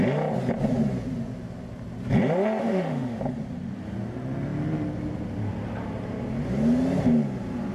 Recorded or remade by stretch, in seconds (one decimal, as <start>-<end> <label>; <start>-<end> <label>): 0.0-2.6 recorded; 2.6-3.2 remade; 3.2-7.7 recorded